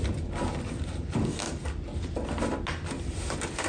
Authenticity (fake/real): real